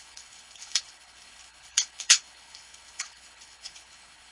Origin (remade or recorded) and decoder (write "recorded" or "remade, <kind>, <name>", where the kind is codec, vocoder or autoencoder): remade, codec, HILCodec